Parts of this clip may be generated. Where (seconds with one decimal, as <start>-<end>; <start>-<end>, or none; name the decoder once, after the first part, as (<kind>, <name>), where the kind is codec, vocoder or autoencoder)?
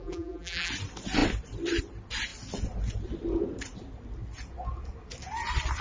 0.0-0.7 (vocoder, BigVGAN v2)